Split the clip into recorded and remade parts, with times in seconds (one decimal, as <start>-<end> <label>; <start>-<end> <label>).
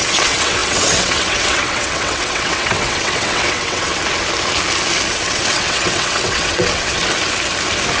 0.0-3.9 remade; 3.9-5.1 recorded; 5.1-7.0 remade; 7.0-8.0 recorded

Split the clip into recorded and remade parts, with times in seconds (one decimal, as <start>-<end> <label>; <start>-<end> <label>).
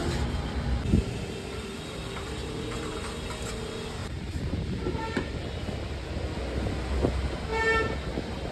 0.0-2.4 recorded; 2.4-3.3 remade; 3.3-4.0 recorded; 4.0-5.4 remade; 5.4-8.5 recorded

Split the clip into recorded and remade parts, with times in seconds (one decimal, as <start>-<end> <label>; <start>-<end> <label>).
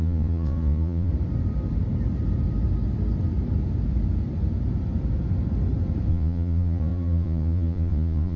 0.0-1.1 remade; 1.1-6.1 recorded; 6.1-8.4 remade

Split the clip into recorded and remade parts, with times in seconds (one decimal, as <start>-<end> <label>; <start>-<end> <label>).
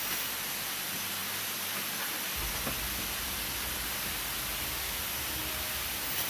0.0-6.3 recorded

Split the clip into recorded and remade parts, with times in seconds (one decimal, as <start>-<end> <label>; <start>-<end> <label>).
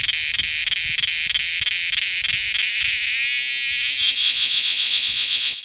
0.0-4.2 recorded; 4.2-5.6 remade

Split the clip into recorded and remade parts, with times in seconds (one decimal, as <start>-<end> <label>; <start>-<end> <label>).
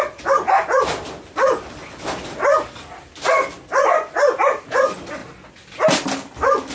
0.0-6.7 recorded